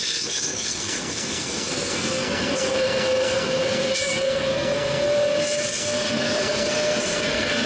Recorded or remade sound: remade